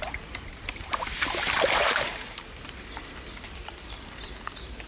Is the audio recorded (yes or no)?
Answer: no